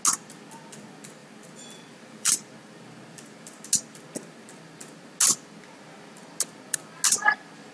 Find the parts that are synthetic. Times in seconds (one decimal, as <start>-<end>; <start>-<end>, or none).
1.2-2.7